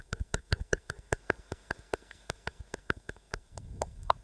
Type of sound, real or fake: fake